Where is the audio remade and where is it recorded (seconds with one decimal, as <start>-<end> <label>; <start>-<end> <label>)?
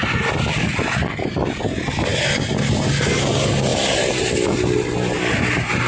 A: 0.0-5.9 recorded